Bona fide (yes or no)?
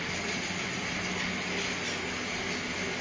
yes